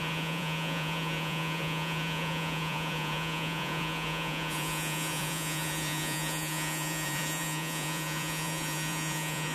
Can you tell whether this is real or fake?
fake